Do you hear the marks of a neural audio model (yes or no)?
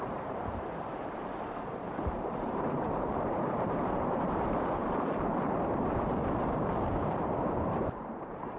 yes